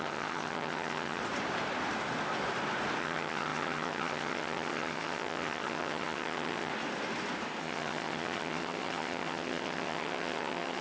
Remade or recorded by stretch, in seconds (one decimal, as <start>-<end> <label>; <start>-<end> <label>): 0.0-1.2 remade; 1.2-3.0 recorded; 3.0-6.7 remade; 6.7-7.6 recorded; 7.6-10.8 remade